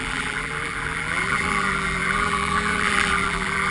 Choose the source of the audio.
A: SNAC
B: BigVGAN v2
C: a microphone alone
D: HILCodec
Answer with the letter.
B